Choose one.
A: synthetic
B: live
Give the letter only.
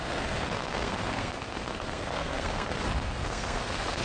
A